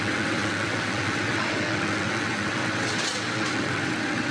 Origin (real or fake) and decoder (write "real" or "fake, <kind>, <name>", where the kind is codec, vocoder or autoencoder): fake, vocoder, WaveNeXt